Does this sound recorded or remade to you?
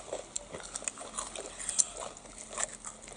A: recorded